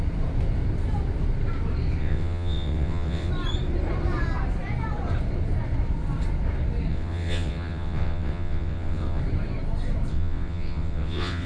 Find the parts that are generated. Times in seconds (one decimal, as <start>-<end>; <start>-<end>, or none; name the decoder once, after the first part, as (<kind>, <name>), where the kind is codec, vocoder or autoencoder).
2.0-3.3 (vocoder, WaveNeXt); 6.9-9.2; 10.1-11.5